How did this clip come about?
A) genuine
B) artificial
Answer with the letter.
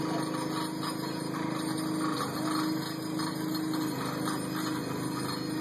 A